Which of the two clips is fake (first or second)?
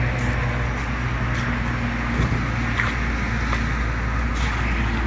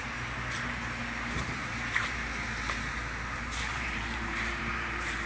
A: second